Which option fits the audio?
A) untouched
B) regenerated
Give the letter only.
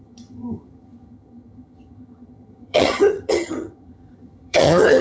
B